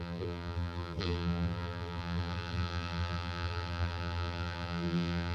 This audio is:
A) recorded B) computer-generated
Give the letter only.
B